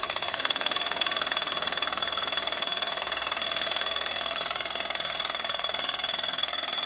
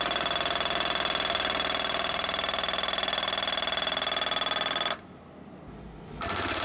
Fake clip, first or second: first